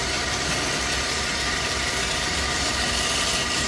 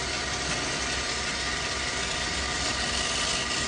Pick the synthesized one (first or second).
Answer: first